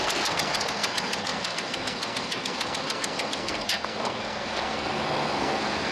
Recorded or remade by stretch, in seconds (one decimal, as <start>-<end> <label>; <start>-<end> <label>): 0.0-5.9 remade